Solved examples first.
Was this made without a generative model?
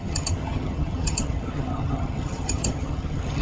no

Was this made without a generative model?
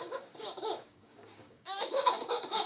no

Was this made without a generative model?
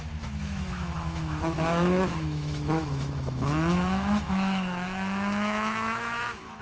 no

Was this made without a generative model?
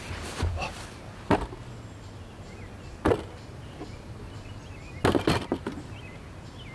yes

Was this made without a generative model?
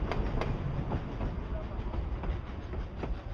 yes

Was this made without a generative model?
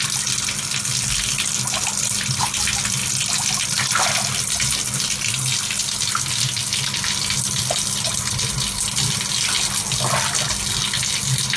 yes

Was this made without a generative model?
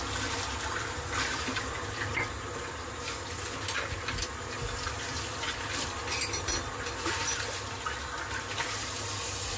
yes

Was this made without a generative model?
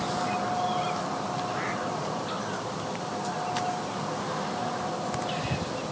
yes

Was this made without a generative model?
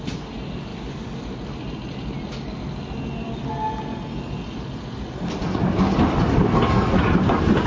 yes